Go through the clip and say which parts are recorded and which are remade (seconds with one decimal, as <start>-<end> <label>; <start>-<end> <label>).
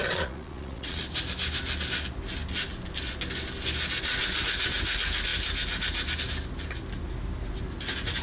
0.0-1.0 remade; 1.0-8.2 recorded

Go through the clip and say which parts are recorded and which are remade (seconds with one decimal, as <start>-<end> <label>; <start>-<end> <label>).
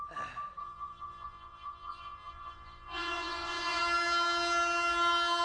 0.0-0.6 recorded; 0.6-3.8 remade; 3.8-5.4 recorded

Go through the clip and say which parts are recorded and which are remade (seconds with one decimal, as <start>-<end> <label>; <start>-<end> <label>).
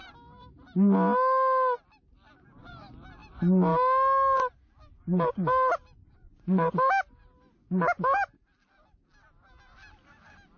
0.0-6.0 recorded; 6.0-6.7 remade; 6.7-10.6 recorded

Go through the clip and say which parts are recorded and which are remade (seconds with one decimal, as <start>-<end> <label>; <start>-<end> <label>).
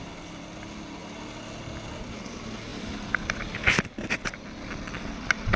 0.0-5.6 recorded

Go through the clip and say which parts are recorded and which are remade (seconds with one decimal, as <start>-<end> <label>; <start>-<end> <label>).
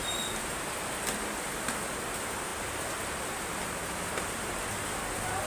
0.0-5.5 recorded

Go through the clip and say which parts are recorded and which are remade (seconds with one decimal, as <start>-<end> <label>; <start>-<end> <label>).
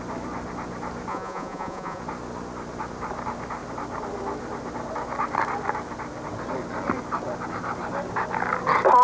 0.0-1.1 recorded; 1.1-2.0 remade; 2.0-9.0 recorded